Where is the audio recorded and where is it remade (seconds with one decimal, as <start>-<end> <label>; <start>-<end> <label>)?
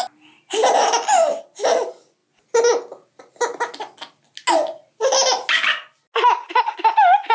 0.0-7.3 recorded